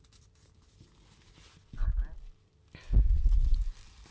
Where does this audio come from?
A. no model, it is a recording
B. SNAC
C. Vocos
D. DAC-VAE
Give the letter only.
A